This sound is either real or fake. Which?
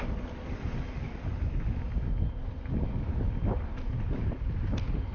real